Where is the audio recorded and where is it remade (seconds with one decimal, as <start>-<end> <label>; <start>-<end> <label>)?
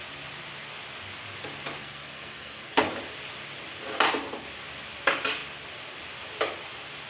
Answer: 0.0-1.8 recorded; 1.8-2.9 remade; 2.9-7.1 recorded